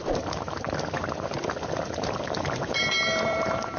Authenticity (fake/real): fake